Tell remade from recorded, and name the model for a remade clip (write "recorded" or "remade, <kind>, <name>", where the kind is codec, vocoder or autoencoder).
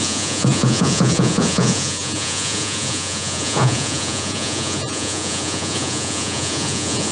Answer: remade, vocoder, Vocos